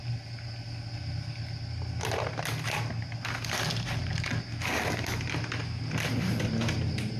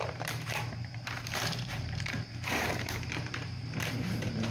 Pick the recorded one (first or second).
first